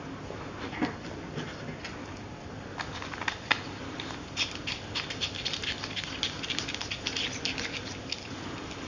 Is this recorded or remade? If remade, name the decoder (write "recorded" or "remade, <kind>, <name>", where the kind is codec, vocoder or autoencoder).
recorded